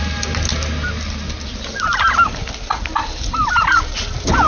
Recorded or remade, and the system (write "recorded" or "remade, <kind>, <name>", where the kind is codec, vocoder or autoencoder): recorded